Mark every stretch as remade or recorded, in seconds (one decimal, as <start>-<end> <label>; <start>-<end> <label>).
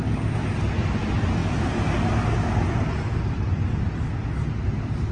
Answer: 0.0-5.1 recorded